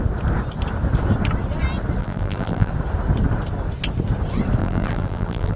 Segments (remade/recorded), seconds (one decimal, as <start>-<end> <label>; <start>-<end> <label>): 0.0-2.0 recorded; 2.0-2.7 remade; 2.7-4.6 recorded; 4.6-5.6 remade